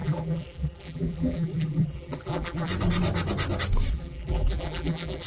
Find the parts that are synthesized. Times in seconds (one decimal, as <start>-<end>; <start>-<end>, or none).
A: 0.0-2.7; 3.9-5.3